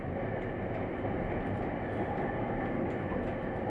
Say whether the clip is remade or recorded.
recorded